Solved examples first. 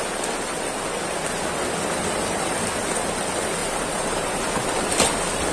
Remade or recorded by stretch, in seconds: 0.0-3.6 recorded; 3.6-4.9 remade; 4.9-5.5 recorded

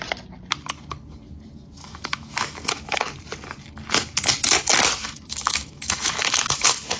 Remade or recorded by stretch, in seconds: 0.0-1.8 recorded; 1.8-3.1 remade; 3.1-5.0 recorded; 5.0-7.0 remade

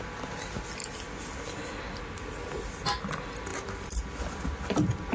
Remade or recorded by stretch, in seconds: 0.0-5.1 recorded

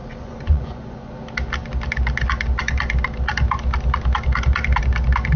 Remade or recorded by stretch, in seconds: 0.0-1.1 remade; 1.1-5.4 recorded

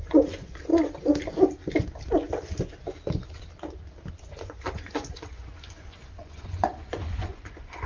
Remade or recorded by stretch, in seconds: 0.0-0.7 remade; 0.7-4.2 recorded; 4.2-7.9 remade